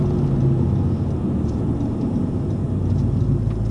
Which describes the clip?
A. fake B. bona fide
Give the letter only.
B